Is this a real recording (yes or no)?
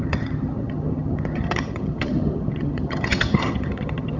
no